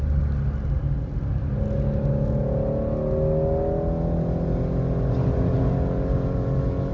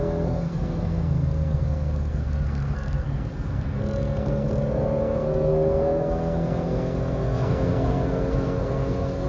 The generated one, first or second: second